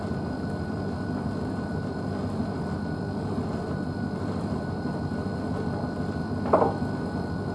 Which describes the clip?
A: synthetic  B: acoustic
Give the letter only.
B